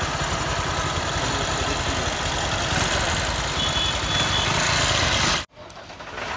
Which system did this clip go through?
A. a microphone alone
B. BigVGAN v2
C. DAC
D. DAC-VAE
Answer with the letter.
A